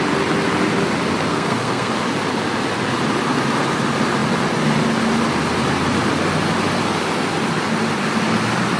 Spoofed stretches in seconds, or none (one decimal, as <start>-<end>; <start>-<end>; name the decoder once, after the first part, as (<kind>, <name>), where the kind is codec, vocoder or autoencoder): 1.3-1.9 (codec, SNAC)